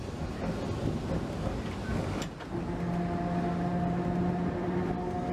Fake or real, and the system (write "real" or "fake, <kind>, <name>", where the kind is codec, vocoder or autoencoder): real